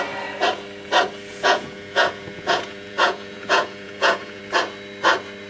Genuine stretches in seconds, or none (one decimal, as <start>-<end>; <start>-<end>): 0.0-1.3; 4.4-5.5